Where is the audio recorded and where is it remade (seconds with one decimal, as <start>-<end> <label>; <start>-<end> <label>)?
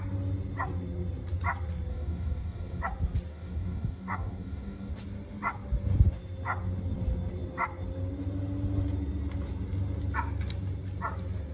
0.0-1.9 recorded; 1.9-2.8 remade; 2.8-3.3 recorded; 3.3-4.9 remade; 4.9-11.5 recorded